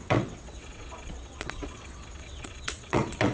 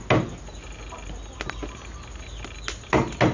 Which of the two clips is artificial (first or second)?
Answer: first